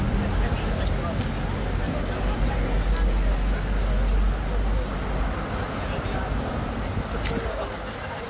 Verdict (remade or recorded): recorded